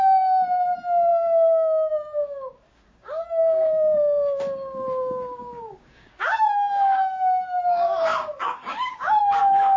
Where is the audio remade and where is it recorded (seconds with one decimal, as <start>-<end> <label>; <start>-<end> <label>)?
0.0-9.8 remade